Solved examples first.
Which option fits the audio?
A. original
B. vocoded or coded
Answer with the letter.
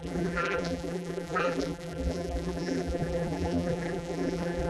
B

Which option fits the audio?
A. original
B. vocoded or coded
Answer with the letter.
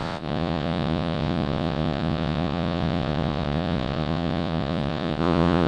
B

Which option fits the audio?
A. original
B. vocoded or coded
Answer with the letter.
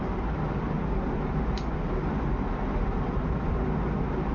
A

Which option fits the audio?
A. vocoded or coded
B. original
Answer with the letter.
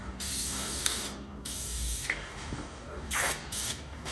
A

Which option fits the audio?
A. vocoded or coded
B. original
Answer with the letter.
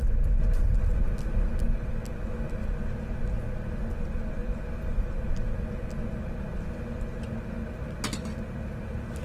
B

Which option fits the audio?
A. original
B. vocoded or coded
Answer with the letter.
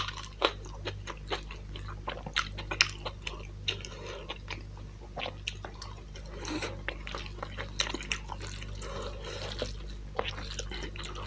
A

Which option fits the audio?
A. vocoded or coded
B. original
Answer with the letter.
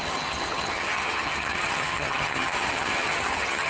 A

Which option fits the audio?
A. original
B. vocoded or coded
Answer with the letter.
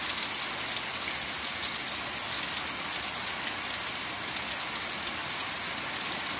A